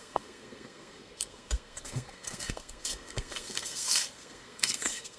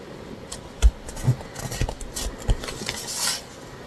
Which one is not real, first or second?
first